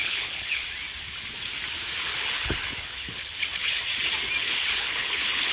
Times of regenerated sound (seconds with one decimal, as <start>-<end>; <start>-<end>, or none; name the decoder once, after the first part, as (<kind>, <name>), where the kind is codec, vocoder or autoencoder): 0.0-0.6 (codec, HILCodec); 2.0-3.8; 4.4-5.5